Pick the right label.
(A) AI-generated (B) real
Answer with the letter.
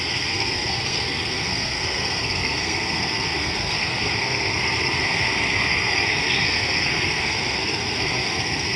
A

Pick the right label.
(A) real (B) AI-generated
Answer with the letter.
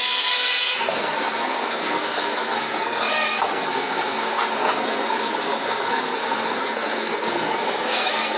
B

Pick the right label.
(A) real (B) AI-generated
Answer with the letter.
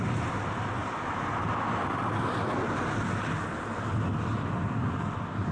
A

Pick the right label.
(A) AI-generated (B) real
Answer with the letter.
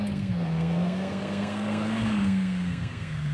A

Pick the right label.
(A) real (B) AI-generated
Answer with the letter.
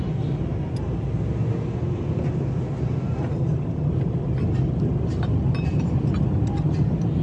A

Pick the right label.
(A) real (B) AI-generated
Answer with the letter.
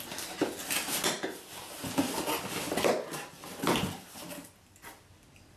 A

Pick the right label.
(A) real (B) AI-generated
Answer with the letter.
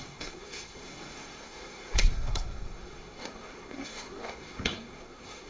B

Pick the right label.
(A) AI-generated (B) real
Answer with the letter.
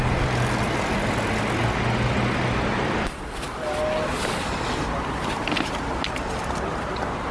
B